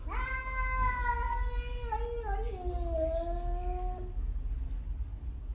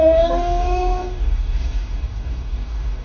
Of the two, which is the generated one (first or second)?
second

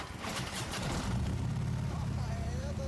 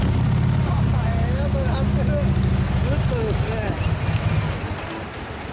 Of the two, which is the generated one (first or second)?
first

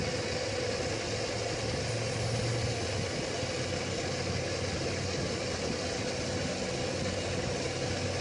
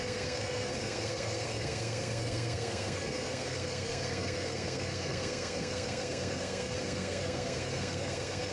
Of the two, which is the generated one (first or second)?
second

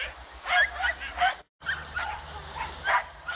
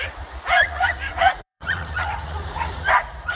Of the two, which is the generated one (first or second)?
second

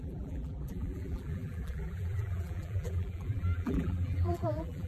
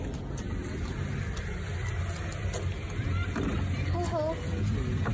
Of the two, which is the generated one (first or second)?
first